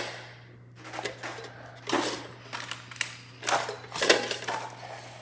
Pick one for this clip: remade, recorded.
recorded